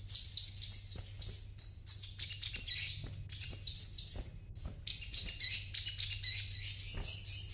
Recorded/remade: recorded